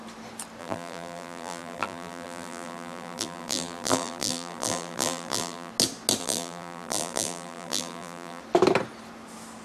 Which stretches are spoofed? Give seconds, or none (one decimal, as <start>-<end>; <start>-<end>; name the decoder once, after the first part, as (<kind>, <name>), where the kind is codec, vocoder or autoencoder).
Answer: 0.6-5.7 (vocoder, BigVGAN v2); 6.2-8.4